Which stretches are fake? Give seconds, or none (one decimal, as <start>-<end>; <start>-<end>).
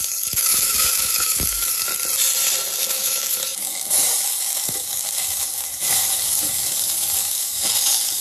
0.0-1.9; 2.9-8.2